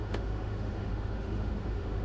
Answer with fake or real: fake